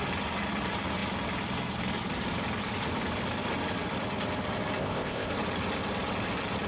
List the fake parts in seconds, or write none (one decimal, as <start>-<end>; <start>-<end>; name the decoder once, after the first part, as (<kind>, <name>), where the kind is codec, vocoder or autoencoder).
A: 4.8-5.3 (codec, ZipCodec)